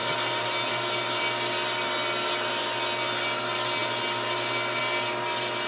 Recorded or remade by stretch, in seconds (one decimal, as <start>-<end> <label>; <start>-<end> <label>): 0.0-5.7 recorded